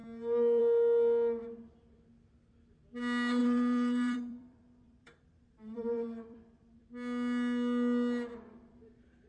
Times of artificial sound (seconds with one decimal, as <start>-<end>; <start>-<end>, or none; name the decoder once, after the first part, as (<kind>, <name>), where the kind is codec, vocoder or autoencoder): 3.4-6.8 (vocoder, BigVGAN v2)